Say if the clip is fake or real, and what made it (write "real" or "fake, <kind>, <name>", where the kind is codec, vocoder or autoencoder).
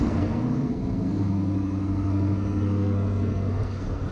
fake, codec, SNAC